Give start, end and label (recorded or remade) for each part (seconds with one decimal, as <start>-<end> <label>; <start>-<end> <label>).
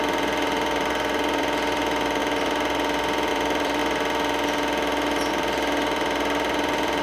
0.0-2.2 remade; 2.2-3.3 recorded; 3.3-3.8 remade; 3.8-5.3 recorded; 5.3-7.0 remade